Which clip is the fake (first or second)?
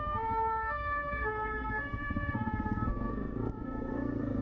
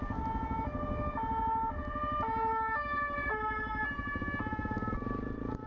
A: first